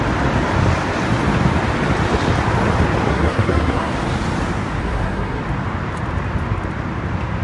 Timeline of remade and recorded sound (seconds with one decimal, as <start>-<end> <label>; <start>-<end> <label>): 0.0-3.1 recorded; 3.1-3.9 remade; 3.9-4.8 recorded; 4.8-5.4 remade; 5.4-7.4 recorded